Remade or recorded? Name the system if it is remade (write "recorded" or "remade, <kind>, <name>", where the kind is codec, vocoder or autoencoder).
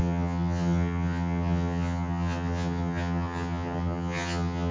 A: remade, vocoder, HiFi-GAN